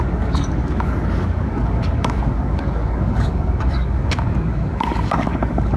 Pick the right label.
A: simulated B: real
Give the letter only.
A